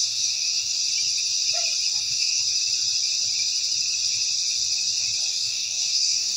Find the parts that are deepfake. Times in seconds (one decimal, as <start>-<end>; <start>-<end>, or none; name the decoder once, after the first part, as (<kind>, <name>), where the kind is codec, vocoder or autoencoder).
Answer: 0.0-0.8 (codec, DAC); 2.0-2.4; 5.3-6.4